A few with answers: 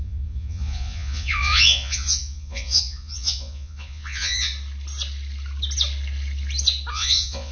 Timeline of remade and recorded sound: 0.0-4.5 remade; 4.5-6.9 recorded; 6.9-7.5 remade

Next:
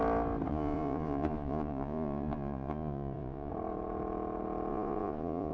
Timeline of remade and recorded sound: 0.0-0.5 recorded; 0.5-3.5 remade; 3.5-4.7 recorded; 4.7-5.5 remade

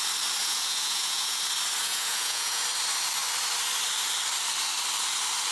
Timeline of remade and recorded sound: 0.0-0.4 recorded; 0.4-1.4 remade; 1.4-1.8 recorded; 1.8-2.6 remade; 2.6-5.5 recorded

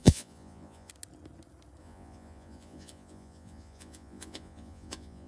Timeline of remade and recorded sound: 0.0-0.9 remade; 0.9-1.8 recorded; 1.8-5.3 remade

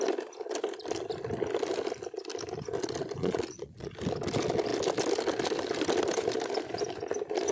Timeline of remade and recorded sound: 0.0-3.2 recorded; 3.2-3.9 remade; 3.9-7.5 recorded

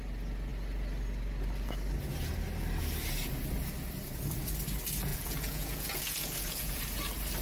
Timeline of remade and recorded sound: 0.0-5.1 recorded; 5.1-6.8 remade; 6.8-7.4 recorded

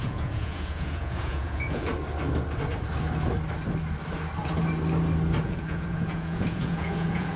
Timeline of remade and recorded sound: 0.0-1.9 remade; 1.9-5.4 recorded; 5.4-7.4 remade